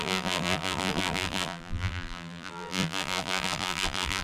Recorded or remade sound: remade